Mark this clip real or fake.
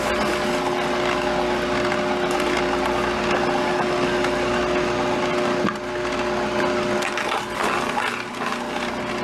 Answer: real